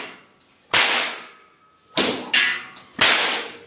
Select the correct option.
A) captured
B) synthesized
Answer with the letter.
A